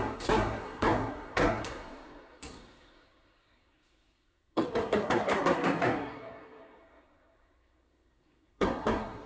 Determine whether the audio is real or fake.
fake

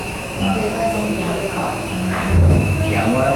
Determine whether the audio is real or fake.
fake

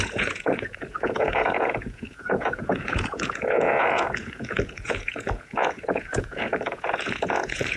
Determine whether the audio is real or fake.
fake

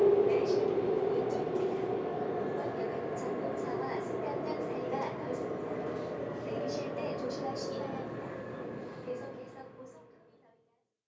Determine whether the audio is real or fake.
real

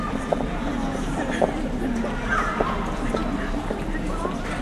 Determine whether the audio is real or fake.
real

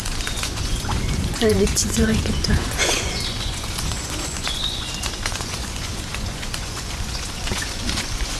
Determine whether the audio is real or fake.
fake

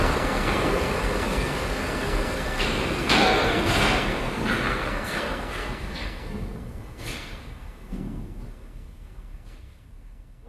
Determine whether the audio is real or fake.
fake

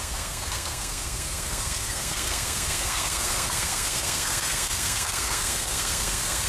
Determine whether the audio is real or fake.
fake